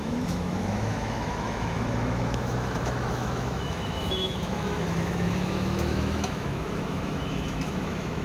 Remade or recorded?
remade